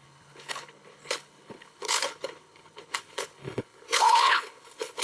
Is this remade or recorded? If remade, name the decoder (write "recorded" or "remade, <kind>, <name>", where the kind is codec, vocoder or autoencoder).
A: remade, codec, HILCodec